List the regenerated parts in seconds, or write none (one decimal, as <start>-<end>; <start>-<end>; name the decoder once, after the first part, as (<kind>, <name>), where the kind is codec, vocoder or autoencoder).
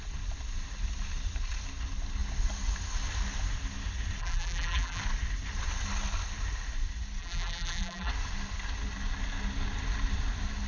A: 4.2-5.0 (vocoder, BigVGAN v2); 7.2-8.1